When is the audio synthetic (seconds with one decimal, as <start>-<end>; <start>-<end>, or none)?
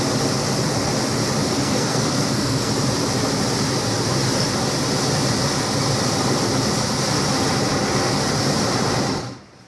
1.5-2.7